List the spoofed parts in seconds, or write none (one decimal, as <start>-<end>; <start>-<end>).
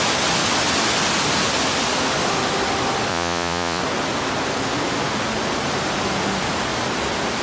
3.1-3.8